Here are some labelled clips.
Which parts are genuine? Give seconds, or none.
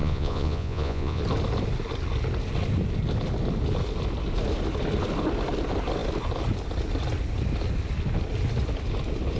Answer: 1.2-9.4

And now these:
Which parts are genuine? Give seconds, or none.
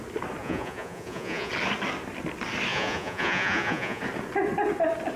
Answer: 0.0-0.4; 1.5-2.7; 4.0-5.2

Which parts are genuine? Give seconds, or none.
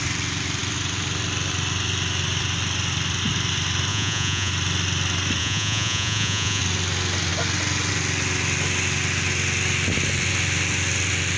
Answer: 0.0-3.9; 4.5-5.4; 6.6-11.4